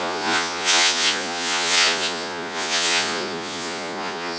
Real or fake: fake